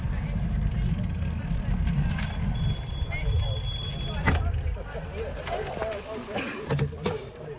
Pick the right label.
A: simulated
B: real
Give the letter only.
B